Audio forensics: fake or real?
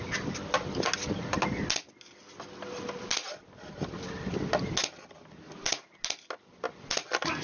real